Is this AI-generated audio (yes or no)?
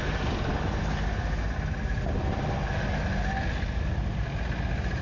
no